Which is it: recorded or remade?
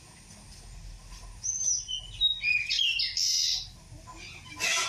recorded